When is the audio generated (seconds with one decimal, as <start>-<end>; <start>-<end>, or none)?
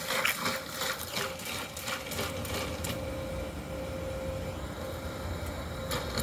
none